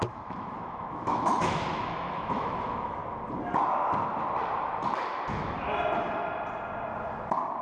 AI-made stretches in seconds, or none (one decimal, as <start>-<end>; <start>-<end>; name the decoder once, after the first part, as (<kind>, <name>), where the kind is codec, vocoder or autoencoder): 0.0-3.0 (autoencoder, DAC-VAE)